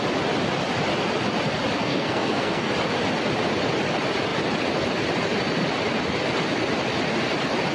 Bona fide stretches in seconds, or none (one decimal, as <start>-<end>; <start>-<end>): 0.0-1.8; 2.7-7.7